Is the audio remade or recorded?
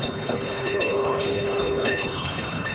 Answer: remade